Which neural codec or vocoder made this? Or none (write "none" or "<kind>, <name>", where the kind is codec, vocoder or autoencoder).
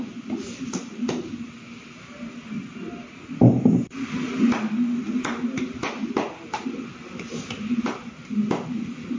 none